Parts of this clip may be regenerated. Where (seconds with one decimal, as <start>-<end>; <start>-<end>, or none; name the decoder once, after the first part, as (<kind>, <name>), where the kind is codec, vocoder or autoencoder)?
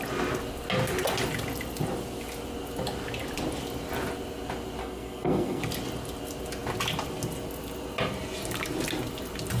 4.8-5.6 (codec, SNAC)